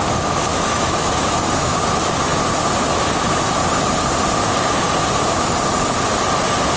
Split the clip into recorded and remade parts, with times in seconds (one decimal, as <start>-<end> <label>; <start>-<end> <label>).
0.0-0.5 recorded; 0.5-1.8 remade; 1.8-6.8 recorded